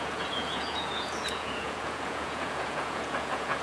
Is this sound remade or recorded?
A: remade